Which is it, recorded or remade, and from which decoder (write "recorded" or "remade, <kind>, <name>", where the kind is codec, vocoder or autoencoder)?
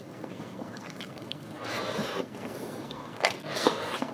remade, codec, SNAC